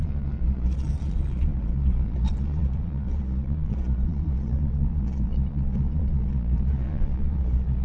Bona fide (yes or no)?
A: no